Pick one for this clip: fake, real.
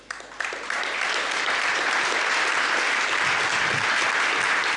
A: real